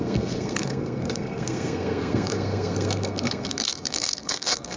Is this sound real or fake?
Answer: fake